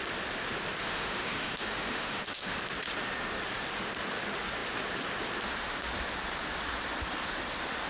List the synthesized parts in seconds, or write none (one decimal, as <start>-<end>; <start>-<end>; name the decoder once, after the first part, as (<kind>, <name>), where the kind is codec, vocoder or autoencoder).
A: 0.8-2.6 (autoencoder, DAC-VAE)